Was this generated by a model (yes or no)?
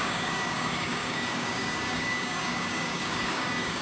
yes